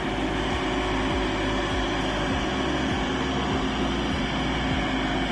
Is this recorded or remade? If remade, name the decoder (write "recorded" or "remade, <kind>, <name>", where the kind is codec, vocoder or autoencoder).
recorded